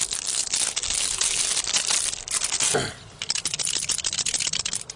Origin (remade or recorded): recorded